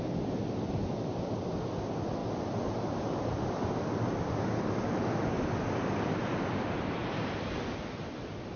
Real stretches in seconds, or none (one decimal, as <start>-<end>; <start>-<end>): 0.0-8.6